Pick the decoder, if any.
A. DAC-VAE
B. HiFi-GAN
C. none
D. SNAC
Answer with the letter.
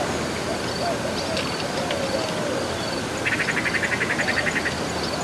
C